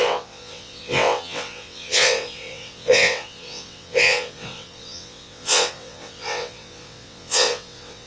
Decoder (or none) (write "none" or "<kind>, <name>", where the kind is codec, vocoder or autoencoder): vocoder, WaveNeXt